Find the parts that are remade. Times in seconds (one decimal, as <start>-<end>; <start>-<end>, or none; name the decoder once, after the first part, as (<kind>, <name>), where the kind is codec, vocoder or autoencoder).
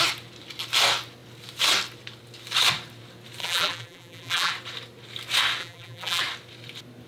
3.4-4.5 (vocoder, BigVGAN v2); 5.6-6.2